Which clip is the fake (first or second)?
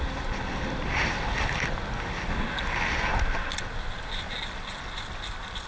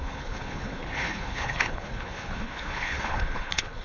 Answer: second